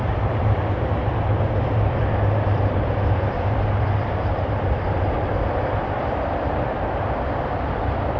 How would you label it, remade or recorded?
remade